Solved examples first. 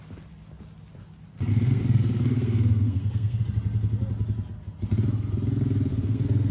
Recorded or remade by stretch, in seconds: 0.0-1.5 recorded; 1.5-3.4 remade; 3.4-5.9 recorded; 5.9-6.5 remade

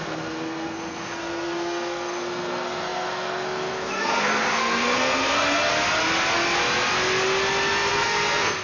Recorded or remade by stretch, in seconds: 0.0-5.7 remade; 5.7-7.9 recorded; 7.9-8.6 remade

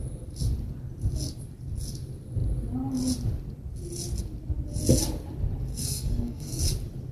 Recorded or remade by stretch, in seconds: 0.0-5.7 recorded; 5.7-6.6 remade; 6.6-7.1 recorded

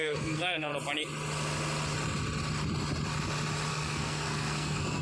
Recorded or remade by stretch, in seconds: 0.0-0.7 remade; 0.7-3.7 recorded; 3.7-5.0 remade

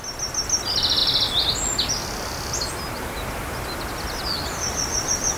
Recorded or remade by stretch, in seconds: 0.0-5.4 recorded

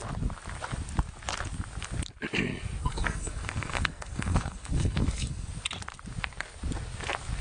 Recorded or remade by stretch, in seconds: 0.0-2.8 recorded; 2.8-5.5 remade; 5.5-7.4 recorded

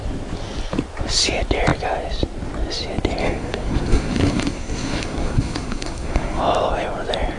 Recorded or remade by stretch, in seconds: 0.0-3.2 recorded; 3.2-6.4 remade; 6.4-7.4 recorded